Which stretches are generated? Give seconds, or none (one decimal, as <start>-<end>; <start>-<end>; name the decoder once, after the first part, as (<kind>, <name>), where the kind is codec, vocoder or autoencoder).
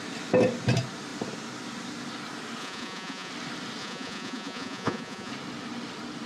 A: 2.6-3.3 (vocoder, Vocos); 3.8-5.3